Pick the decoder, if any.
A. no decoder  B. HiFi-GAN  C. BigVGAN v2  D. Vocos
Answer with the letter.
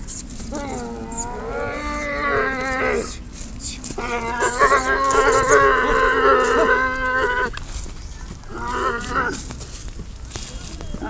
A